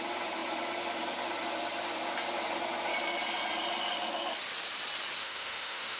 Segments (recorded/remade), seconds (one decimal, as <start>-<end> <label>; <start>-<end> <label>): 0.0-5.2 recorded; 5.2-6.0 remade